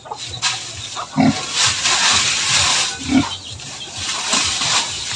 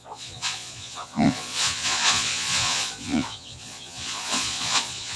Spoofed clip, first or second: second